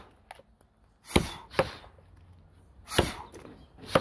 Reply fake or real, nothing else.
real